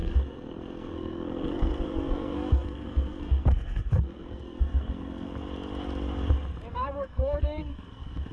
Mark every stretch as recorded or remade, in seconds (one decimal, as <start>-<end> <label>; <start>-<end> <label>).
0.0-5.3 remade; 5.3-6.7 recorded; 6.7-8.3 remade